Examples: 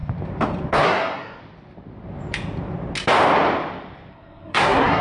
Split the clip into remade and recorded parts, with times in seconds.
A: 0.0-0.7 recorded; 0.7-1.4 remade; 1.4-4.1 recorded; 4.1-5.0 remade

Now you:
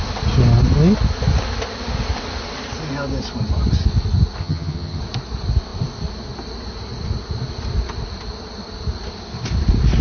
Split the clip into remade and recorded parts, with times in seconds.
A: 0.0-4.4 recorded; 4.4-5.0 remade; 5.0-10.0 recorded

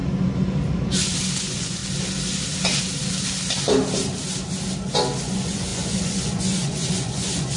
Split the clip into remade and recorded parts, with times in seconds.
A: 0.0-1.4 recorded; 1.4-1.8 remade; 1.8-5.2 recorded; 5.2-7.6 remade